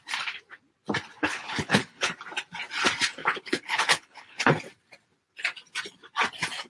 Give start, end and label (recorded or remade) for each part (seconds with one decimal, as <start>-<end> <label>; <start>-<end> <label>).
0.0-1.2 recorded; 1.2-2.1 remade; 2.1-3.2 recorded; 3.2-4.5 remade; 4.5-6.7 recorded